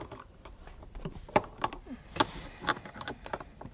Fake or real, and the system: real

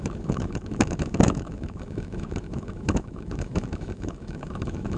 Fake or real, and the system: fake, autoencoder, DAC-VAE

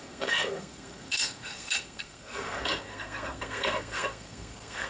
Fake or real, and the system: fake, codec, SNAC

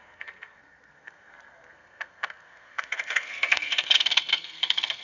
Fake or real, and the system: fake, codec, SNAC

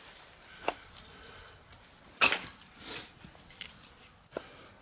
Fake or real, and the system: real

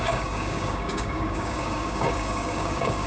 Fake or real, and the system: fake, codec, DAC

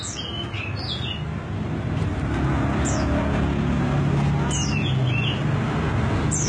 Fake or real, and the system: real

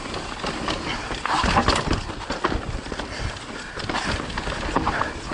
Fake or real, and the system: real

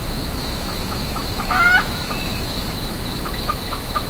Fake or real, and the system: fake, autoencoder, DAC-VAE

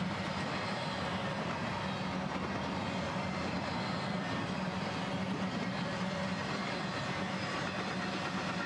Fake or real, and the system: real